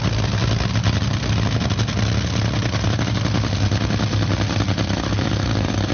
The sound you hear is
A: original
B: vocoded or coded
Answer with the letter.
A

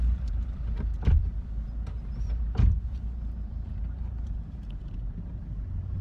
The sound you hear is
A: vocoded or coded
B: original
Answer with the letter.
A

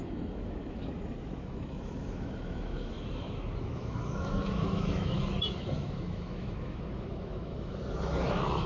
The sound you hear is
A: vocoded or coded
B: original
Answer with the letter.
A